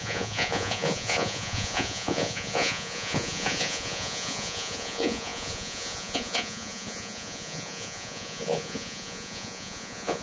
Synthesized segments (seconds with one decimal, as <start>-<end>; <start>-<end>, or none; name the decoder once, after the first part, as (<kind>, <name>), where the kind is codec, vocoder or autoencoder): 0.0-10.2 (vocoder, Vocos)